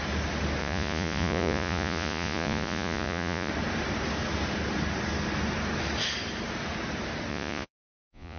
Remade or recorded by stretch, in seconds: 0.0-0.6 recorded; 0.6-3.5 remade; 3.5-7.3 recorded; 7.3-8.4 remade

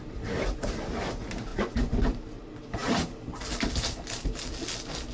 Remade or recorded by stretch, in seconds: 0.0-1.5 recorded; 1.5-2.1 remade; 2.1-5.1 recorded